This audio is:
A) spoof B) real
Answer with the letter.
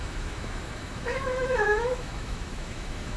A